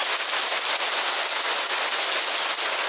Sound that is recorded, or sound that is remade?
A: recorded